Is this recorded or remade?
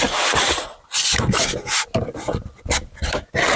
recorded